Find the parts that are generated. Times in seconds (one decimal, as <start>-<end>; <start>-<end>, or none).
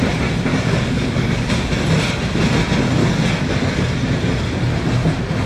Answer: 0.5-1.5; 3.0-3.7